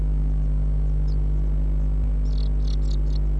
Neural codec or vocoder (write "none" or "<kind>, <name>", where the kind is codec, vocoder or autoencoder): none